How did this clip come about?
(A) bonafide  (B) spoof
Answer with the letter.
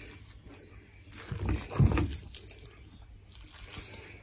A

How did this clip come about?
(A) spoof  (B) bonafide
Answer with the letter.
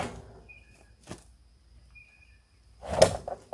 B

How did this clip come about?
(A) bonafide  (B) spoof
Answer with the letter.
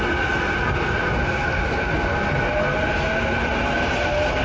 A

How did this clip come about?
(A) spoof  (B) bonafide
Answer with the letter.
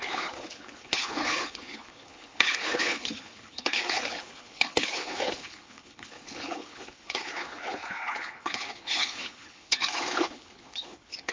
A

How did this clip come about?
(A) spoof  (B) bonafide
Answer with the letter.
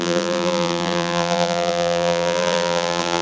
A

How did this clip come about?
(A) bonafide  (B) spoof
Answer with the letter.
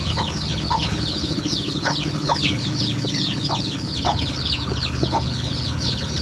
B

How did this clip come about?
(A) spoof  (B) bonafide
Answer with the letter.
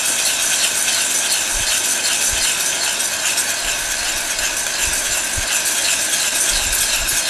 B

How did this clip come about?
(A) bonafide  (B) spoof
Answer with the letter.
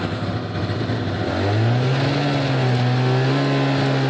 A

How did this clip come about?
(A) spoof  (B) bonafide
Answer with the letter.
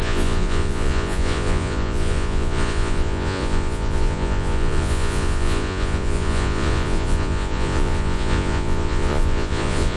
A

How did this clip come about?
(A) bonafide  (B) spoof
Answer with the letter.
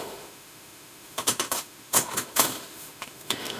B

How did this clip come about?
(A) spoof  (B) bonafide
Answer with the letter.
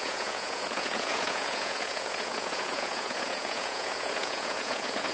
A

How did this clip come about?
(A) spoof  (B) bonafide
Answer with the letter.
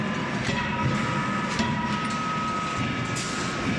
B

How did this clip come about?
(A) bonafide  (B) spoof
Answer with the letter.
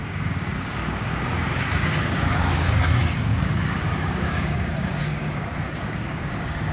B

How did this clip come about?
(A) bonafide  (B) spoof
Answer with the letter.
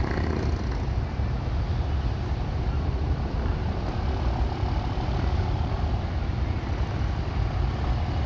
A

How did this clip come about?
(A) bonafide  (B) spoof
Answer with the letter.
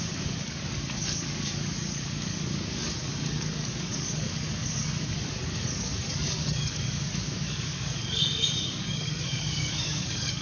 B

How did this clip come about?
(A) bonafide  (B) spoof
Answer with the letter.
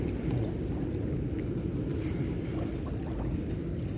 A